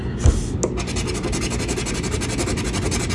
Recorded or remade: recorded